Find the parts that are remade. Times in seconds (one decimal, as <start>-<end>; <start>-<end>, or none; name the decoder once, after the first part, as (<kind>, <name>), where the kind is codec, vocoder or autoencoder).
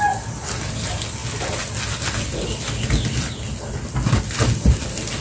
none